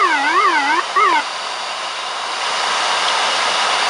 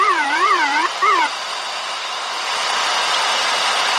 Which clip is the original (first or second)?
first